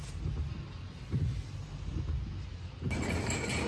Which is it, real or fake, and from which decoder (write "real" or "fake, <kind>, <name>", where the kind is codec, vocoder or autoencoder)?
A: real